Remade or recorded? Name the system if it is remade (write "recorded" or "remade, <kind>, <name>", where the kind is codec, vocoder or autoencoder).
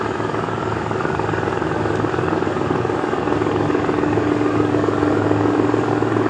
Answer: remade, codec, DAC